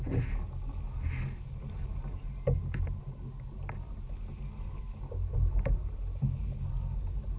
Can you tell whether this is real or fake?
real